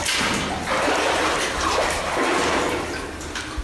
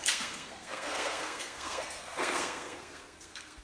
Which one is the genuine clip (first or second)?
first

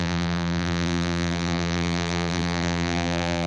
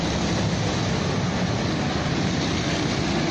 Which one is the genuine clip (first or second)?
second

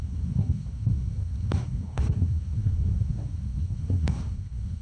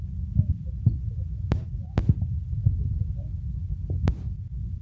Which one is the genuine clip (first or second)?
second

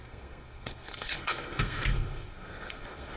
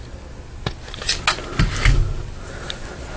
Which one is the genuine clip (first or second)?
second